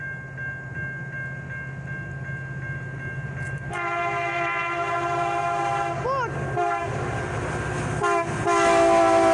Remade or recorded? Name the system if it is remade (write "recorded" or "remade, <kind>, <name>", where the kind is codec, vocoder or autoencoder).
recorded